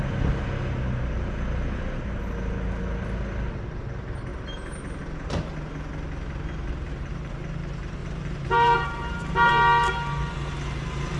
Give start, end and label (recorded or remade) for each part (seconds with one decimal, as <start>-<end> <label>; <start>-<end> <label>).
0.0-8.0 recorded; 8.0-9.5 remade; 9.5-11.2 recorded